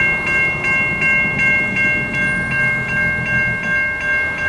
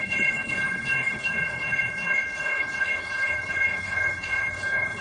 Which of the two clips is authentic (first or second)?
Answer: first